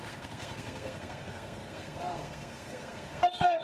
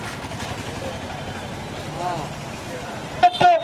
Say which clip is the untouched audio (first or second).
second